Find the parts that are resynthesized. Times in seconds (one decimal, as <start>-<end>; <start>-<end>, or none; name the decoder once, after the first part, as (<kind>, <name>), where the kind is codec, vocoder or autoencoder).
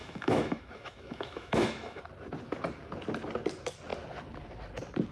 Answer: 0.0-2.0 (autoencoder, DAC-VAE)